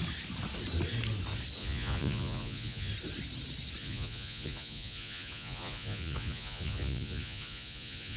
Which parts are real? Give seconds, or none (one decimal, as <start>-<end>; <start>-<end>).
0.0-1.6; 2.9-3.8